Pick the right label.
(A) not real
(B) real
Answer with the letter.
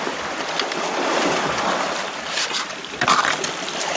A